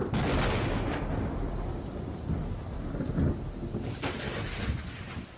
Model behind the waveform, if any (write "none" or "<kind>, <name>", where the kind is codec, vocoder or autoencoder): none